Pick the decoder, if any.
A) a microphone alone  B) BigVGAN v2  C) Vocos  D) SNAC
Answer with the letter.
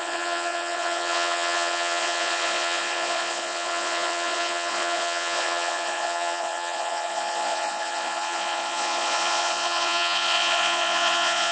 C